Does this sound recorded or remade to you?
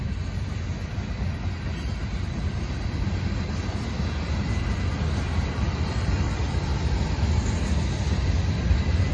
recorded